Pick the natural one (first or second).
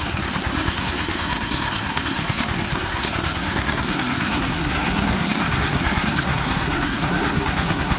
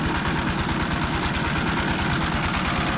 second